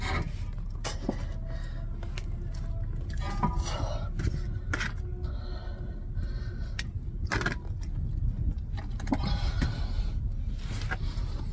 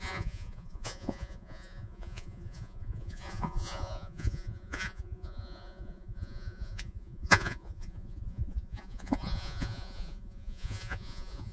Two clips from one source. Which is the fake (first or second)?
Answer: second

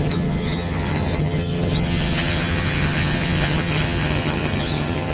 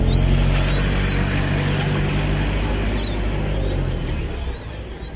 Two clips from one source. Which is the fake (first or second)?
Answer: first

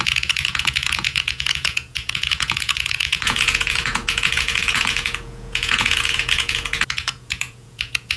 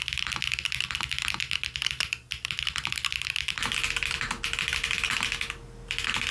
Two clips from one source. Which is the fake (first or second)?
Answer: first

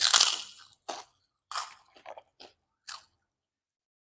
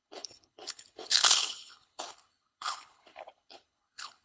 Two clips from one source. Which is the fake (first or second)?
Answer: second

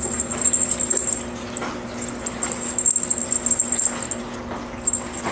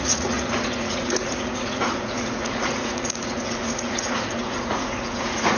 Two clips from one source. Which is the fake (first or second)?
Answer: second